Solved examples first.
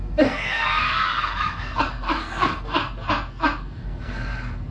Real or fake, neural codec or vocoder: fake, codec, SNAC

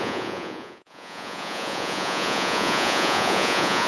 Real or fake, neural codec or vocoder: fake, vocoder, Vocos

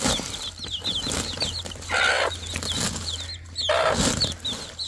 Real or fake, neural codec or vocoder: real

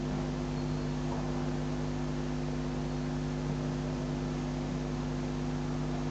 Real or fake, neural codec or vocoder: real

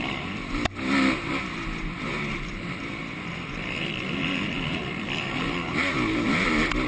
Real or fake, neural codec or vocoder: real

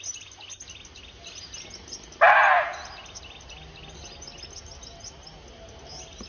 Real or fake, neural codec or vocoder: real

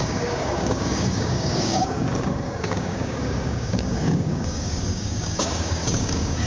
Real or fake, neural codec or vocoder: fake, codec, DAC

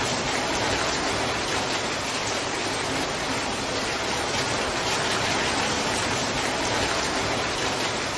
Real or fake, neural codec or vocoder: fake, vocoder, BigVGAN v2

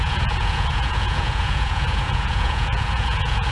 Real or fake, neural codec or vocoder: fake, vocoder, Vocos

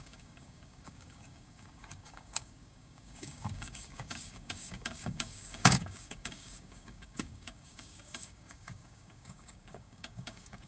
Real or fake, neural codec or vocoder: fake, codec, DAC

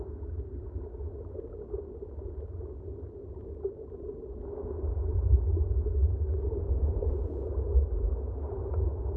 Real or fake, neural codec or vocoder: real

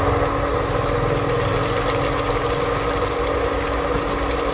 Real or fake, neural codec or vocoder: real